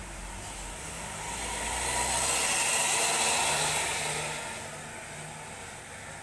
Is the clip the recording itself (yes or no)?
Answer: yes